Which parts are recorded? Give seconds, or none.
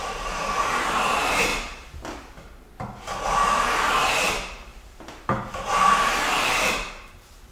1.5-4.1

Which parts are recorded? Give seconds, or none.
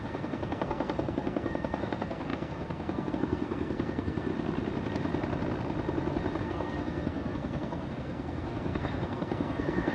4.3-6.4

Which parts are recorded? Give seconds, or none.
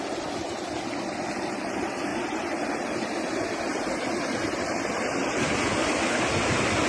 0.0-6.9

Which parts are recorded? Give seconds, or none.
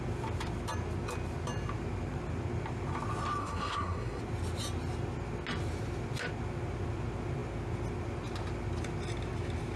0.0-3.4; 4.2-9.8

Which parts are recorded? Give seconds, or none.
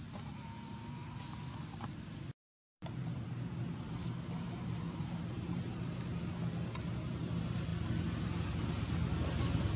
0.0-2.5; 6.0-9.8